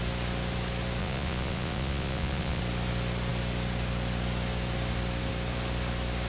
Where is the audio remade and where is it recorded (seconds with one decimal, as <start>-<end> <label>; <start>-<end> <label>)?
0.0-1.0 recorded; 1.0-2.6 remade; 2.6-6.3 recorded

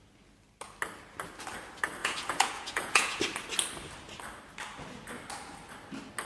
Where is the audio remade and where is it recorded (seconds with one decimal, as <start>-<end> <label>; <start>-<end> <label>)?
0.0-2.0 recorded; 2.0-3.2 remade; 3.2-6.2 recorded

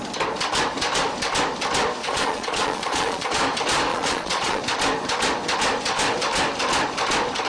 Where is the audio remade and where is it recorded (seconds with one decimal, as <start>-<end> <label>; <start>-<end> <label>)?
0.0-2.0 recorded; 2.0-3.4 remade; 3.4-3.9 recorded; 3.9-4.6 remade; 4.6-7.5 recorded

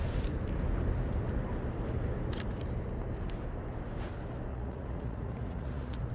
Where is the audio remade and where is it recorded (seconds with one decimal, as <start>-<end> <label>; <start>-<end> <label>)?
0.0-4.5 recorded; 4.5-6.1 remade